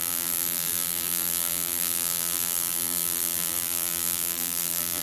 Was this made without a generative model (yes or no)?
no